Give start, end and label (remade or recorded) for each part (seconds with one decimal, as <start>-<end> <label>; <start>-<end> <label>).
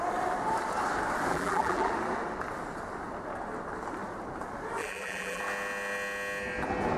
0.0-1.3 recorded; 1.3-1.9 remade; 1.9-4.8 recorded; 4.8-5.4 remade; 5.4-7.0 recorded